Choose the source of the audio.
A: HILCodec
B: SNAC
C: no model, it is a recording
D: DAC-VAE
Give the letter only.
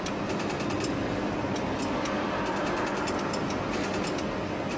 C